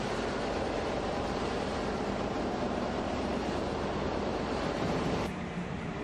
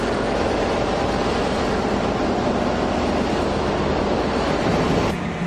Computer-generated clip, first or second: first